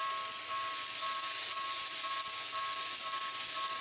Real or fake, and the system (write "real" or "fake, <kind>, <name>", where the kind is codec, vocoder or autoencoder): real